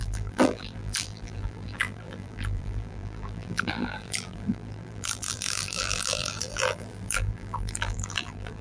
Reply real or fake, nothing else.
fake